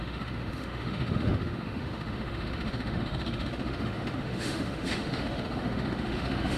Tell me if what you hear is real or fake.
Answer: fake